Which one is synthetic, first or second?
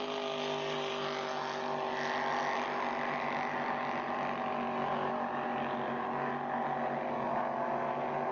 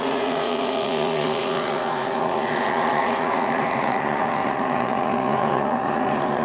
second